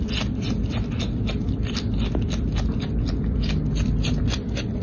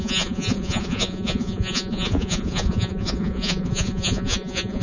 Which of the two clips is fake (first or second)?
second